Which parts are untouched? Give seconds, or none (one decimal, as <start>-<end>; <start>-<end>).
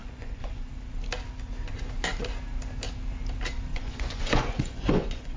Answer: 0.7-3.7